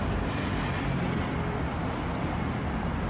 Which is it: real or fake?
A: real